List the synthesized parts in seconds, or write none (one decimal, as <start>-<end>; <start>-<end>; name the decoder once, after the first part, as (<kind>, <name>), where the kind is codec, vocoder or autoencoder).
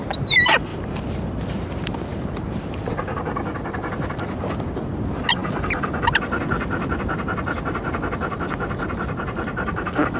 0.7-1.4 (vocoder, BigVGAN v2); 2.1-3.2